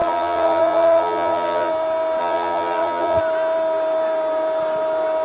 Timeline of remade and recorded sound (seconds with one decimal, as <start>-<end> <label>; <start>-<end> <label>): 0.0-1.7 remade; 1.7-2.2 recorded; 2.2-3.2 remade; 3.2-5.2 recorded